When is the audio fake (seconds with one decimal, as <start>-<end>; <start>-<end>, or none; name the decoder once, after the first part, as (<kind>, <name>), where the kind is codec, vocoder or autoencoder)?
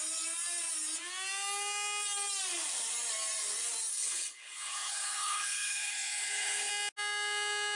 3.9-6.7 (codec, HILCodec)